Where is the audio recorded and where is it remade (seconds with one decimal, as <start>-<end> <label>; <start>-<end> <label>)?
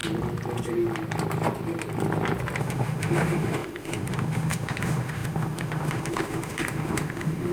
0.0-2.6 recorded; 2.6-7.5 remade